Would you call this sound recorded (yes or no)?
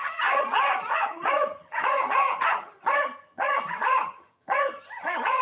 no